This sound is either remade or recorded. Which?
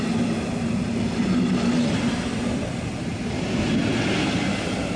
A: recorded